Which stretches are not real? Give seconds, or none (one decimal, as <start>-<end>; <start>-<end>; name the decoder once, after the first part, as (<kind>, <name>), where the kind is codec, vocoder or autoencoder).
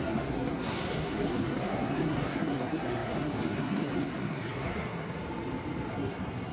0.0-5.2 (codec, SNAC); 5.9-6.5